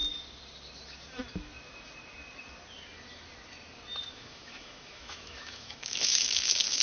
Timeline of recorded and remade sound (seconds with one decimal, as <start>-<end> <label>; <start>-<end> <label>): 0.0-4.1 recorded; 4.1-6.8 remade